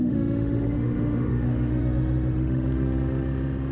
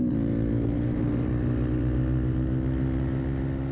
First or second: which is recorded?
second